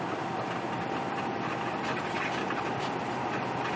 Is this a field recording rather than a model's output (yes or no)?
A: yes